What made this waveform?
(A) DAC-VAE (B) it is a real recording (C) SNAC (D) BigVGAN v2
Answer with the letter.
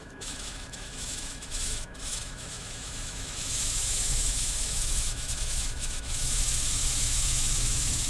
A